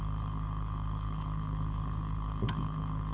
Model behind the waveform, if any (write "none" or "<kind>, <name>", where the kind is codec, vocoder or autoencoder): codec, HILCodec